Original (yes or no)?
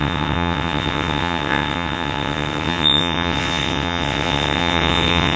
no